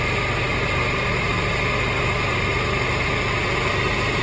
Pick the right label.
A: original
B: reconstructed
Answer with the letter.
A